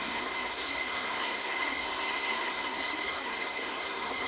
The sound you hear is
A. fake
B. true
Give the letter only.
A